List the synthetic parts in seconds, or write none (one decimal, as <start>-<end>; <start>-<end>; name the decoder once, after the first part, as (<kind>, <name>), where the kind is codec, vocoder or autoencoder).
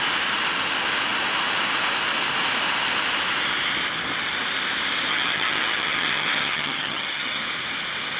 5.1-7.4 (vocoder, HiFi-GAN)